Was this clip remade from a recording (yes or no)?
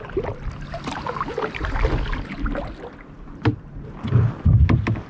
no